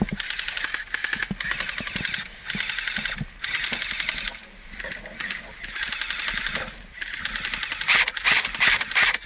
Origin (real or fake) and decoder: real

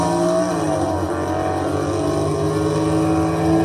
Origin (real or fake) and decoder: real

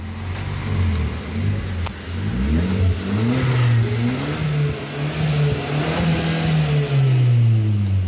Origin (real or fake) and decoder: real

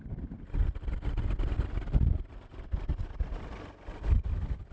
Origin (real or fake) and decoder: real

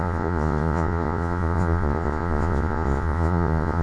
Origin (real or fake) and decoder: fake, vocoder, Vocos